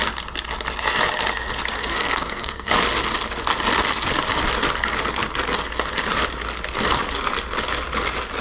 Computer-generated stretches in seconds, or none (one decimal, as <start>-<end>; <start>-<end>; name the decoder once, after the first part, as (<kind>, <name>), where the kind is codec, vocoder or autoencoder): 1.8-2.7 (codec, SNAC)